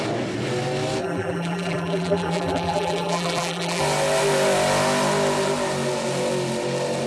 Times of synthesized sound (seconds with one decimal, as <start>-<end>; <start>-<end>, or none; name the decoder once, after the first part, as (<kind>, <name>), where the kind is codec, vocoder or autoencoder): 1.0-3.8 (vocoder, BigVGAN v2)